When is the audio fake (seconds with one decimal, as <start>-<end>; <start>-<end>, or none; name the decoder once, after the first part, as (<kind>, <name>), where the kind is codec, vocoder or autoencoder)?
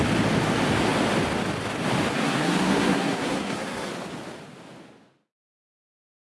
2.1-3.9 (codec, SNAC)